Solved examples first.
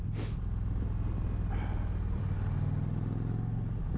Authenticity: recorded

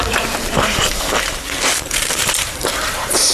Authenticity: remade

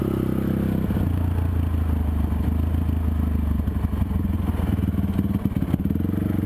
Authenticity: recorded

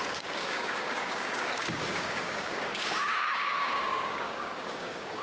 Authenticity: remade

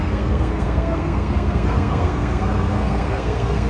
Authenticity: remade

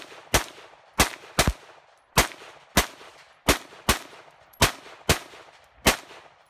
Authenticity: recorded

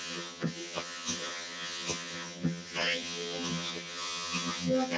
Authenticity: remade